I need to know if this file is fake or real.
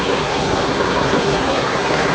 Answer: fake